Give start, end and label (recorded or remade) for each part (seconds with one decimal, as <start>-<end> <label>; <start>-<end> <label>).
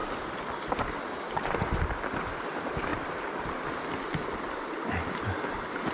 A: 0.0-5.9 recorded